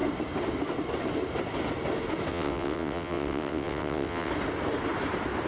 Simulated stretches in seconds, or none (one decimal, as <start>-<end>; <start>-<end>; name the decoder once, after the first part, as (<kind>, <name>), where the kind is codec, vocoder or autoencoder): 2.3-4.3 (vocoder, WaveNeXt)